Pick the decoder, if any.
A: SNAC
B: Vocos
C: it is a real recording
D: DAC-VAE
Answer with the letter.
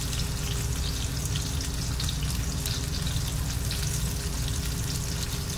C